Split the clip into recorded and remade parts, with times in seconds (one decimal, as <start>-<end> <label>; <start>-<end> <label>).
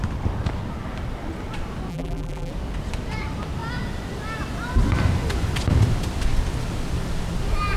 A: 0.0-1.9 recorded; 1.9-2.5 remade; 2.5-7.8 recorded